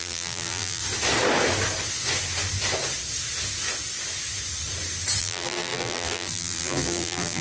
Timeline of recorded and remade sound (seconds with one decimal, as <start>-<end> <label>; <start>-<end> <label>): 0.0-0.8 remade; 0.8-5.2 recorded; 5.2-7.4 remade